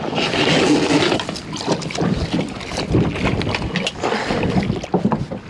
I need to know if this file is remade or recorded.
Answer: recorded